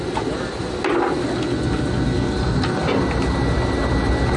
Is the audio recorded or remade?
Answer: recorded